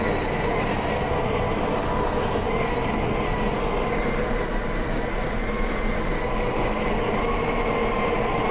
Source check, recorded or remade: recorded